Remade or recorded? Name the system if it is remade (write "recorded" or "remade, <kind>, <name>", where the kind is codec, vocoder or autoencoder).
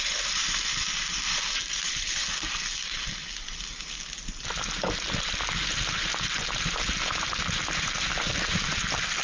recorded